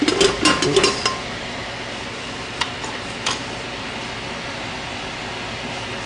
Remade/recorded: recorded